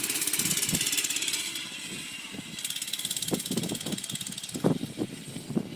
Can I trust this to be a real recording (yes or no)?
yes